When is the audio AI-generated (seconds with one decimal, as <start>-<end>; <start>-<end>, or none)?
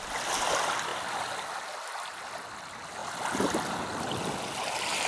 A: none